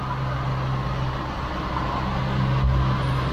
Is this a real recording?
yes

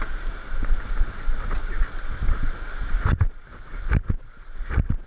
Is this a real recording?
yes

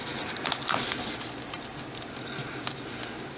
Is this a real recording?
yes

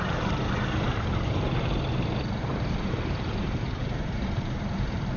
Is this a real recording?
no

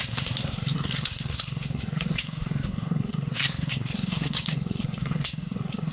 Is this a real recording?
no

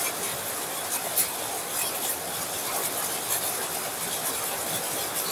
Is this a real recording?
yes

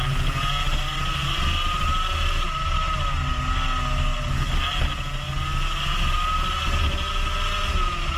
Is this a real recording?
yes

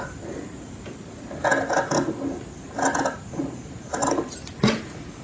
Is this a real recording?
yes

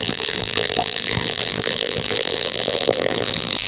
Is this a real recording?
no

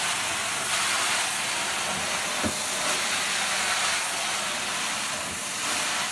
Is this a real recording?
yes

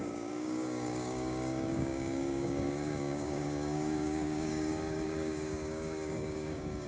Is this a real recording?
no